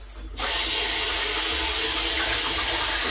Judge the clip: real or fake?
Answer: real